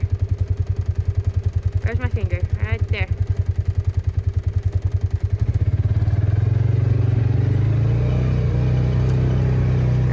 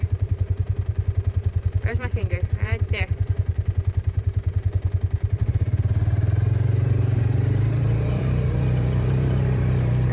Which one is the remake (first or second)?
second